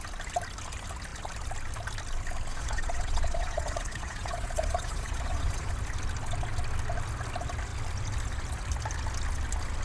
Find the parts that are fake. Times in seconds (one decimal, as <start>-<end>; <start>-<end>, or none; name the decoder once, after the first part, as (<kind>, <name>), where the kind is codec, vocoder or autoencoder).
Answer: 2.5-5.7 (vocoder, Vocos)